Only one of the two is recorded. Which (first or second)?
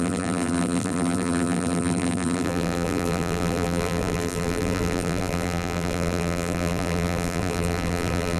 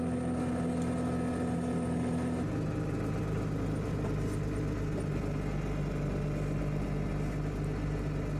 second